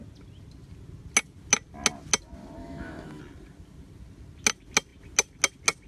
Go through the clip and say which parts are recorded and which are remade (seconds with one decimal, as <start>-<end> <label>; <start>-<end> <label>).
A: 0.0-2.6 recorded; 2.6-3.2 remade; 3.2-5.9 recorded